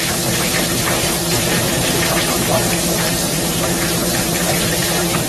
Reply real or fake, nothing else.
fake